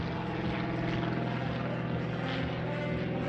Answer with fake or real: real